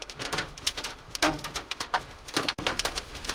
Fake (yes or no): yes